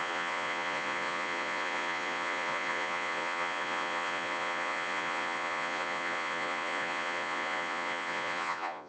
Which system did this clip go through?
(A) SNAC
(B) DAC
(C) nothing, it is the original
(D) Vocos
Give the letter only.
D